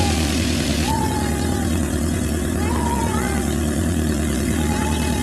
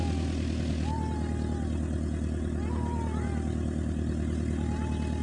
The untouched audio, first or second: second